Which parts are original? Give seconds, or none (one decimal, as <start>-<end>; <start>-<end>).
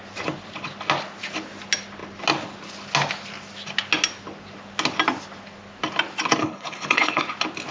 0.0-6.4; 7.2-7.7